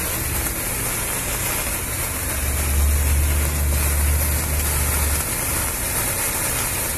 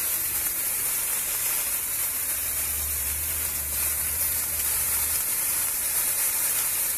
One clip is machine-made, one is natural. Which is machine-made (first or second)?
second